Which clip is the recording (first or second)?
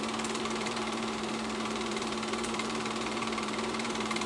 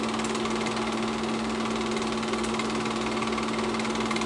second